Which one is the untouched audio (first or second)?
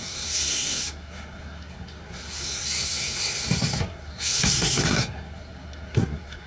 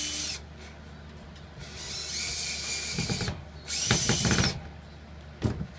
second